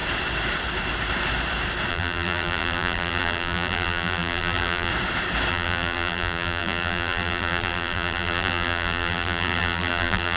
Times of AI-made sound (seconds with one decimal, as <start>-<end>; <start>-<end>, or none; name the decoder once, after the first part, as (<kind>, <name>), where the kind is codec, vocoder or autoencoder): 1.9-4.9 (vocoder, BigVGAN v2); 5.5-10.4